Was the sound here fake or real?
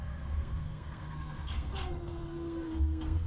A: fake